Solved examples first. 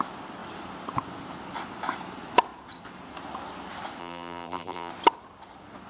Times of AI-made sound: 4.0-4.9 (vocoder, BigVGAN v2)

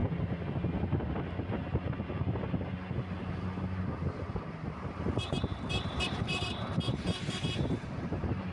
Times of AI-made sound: 4.5-8.5 (vocoder, BigVGAN v2)

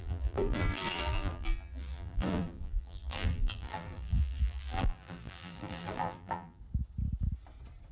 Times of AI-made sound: 0.0-6.6 (vocoder, BigVGAN v2)

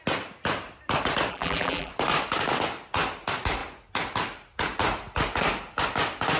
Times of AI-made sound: 1.3-1.9 (vocoder, BigVGAN v2)